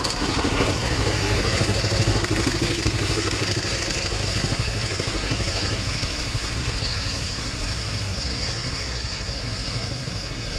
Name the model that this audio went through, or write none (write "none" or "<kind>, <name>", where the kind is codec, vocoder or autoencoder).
codec, SNAC